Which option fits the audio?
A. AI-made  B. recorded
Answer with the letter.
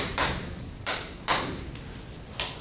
B